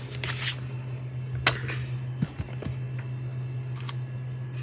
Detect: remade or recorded recorded